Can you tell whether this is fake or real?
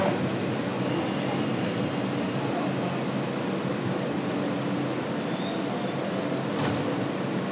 real